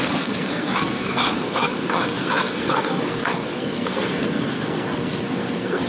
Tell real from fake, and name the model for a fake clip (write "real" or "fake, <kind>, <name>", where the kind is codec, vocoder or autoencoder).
fake, codec, SNAC